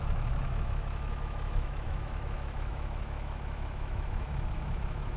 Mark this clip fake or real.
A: fake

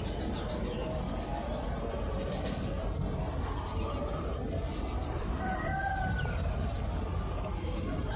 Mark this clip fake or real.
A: real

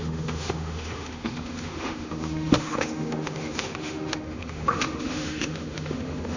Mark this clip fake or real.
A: fake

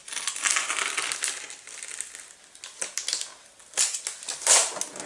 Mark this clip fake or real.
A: real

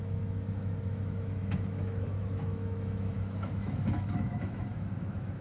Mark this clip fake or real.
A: fake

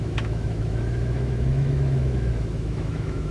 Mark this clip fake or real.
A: fake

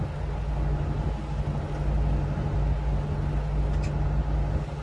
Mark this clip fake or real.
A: real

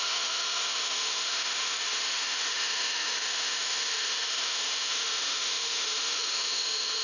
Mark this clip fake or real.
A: fake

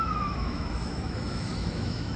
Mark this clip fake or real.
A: fake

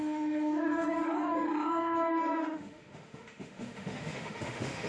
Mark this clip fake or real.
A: fake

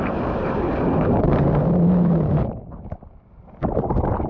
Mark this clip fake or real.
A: real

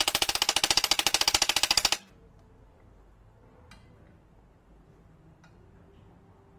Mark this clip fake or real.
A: real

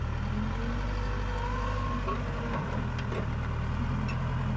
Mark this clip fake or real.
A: real